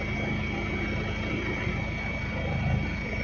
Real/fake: fake